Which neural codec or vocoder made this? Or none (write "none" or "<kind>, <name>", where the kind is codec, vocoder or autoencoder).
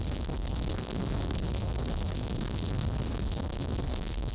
codec, SNAC